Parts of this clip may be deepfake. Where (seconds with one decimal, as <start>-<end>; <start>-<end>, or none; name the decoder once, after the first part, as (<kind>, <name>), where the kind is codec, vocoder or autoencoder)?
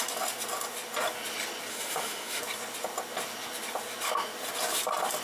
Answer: 1.7-2.4 (autoencoder, DAC-VAE)